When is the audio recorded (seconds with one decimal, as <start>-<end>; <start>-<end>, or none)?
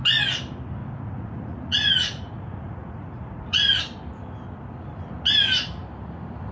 0.0-0.8; 3.8-6.5